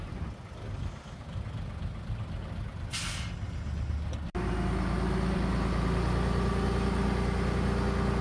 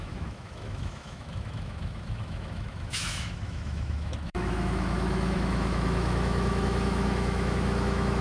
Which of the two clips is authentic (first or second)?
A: first